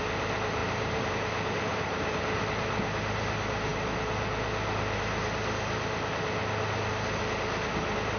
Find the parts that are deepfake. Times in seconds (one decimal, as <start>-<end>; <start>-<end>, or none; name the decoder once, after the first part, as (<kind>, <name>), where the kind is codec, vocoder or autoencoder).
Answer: 0.6-1.1 (vocoder, BigVGAN v2)